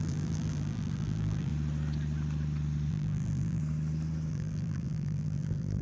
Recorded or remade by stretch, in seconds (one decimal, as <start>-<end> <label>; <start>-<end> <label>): 0.0-1.5 remade; 1.5-2.9 recorded; 2.9-3.6 remade; 3.6-4.3 recorded; 4.3-5.8 remade